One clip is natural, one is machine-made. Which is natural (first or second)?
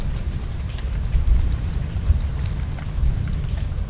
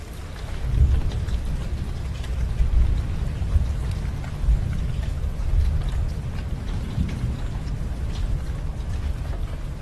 second